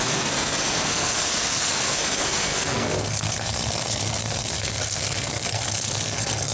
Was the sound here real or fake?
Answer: fake